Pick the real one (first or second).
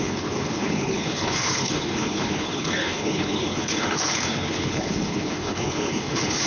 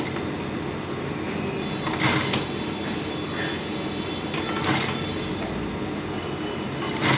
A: second